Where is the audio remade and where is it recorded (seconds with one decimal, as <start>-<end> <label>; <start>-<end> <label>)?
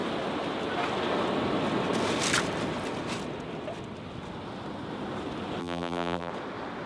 0.0-5.6 recorded; 5.6-6.3 remade; 6.3-6.9 recorded